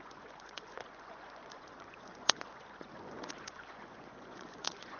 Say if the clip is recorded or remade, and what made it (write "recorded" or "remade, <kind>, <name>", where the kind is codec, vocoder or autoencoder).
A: remade, vocoder, Vocos